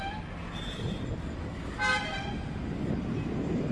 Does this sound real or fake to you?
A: real